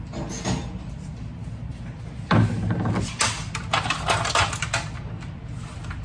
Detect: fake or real real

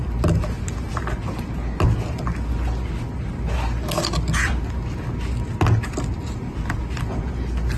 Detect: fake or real real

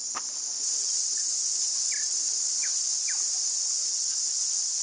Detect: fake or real real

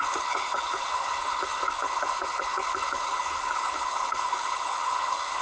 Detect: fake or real fake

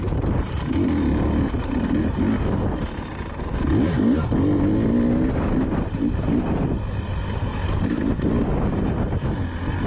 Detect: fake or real real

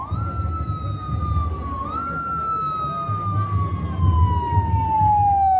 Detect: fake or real real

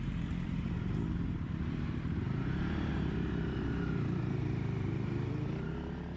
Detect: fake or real fake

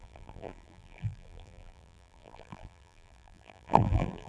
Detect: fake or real fake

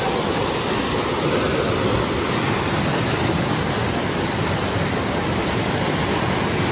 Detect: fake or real real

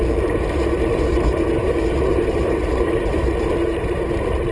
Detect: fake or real fake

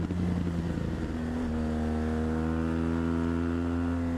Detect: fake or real real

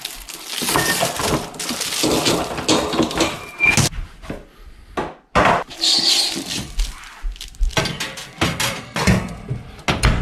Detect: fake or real real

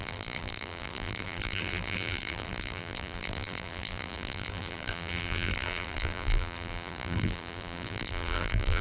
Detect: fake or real fake